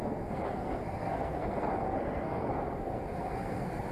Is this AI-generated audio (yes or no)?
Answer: yes